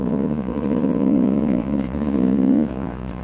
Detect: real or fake fake